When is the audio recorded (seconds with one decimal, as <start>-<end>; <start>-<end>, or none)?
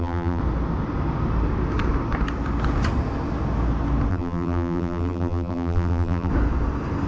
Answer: 0.4-4.1; 6.3-7.1